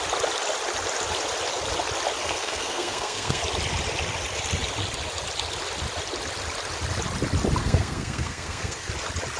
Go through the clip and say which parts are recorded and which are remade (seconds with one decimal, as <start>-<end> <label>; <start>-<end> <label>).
0.0-2.2 recorded; 2.2-3.4 remade; 3.4-7.6 recorded; 7.6-8.9 remade; 8.9-9.4 recorded